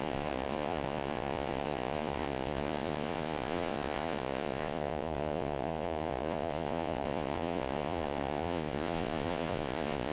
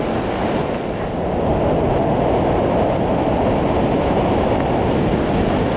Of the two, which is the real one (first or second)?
second